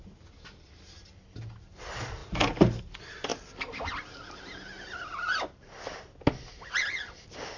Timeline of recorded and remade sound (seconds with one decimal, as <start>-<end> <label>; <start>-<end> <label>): 0.0-7.6 recorded